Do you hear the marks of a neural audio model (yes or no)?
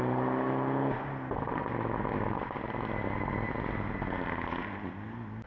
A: no